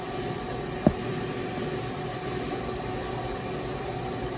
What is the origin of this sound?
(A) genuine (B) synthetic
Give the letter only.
A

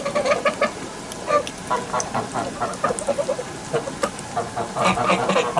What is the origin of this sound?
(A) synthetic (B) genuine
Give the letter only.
B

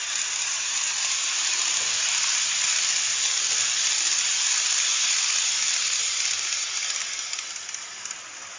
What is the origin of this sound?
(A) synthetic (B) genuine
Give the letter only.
B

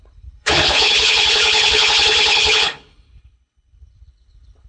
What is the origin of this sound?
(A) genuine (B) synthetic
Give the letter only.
B